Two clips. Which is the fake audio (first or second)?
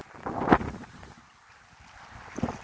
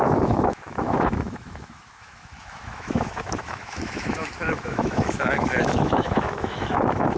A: second